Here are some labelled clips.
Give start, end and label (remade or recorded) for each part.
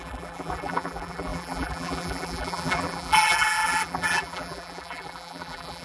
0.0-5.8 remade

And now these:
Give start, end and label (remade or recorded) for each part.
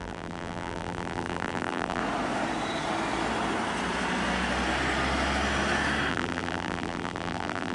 0.0-2.0 remade; 2.0-6.1 recorded; 6.1-7.7 remade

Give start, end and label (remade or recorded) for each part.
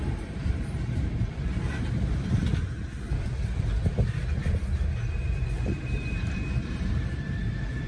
0.0-2.4 remade; 2.4-5.2 recorded; 5.2-7.9 remade